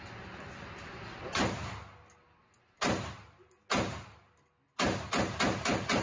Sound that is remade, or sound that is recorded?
recorded